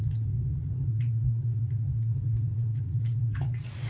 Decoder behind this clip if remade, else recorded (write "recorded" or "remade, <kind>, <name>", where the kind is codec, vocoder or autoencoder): remade, vocoder, Vocos